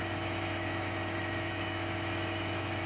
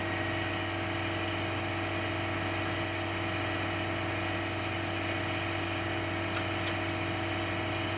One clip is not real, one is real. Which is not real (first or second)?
first